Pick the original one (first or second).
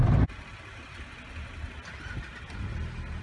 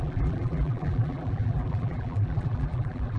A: first